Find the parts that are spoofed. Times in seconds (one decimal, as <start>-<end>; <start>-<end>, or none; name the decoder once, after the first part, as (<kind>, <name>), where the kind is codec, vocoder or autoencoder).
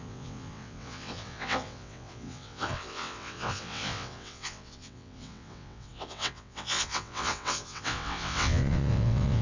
0.0-9.4 (vocoder, WaveNeXt)